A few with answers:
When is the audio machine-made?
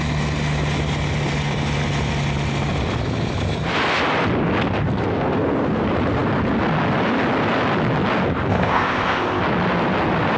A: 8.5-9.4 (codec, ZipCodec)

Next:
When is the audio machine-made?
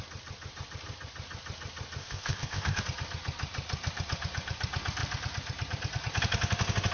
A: 2.0-2.8 (codec, ZipCodec)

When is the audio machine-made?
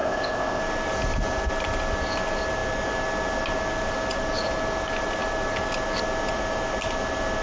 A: 0.0-0.6 (codec, ZipCodec)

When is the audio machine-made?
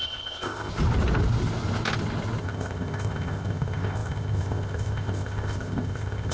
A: 0.0-0.7 (codec, ZipCodec); 2.4-6.3